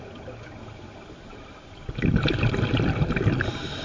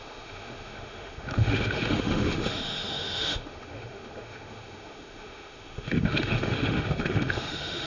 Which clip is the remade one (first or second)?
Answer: second